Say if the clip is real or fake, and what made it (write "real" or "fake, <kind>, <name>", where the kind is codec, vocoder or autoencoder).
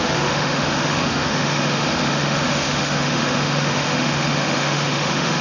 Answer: fake, autoencoder, DAC-VAE